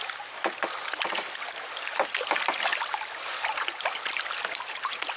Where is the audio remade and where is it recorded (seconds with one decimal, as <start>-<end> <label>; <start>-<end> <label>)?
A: 0.0-2.7 recorded; 2.7-4.7 remade; 4.7-5.2 recorded